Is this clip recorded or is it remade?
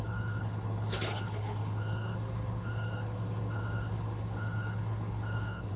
remade